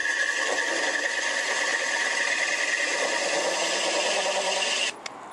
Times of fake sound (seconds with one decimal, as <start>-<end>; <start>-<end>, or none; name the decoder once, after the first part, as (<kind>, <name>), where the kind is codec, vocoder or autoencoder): none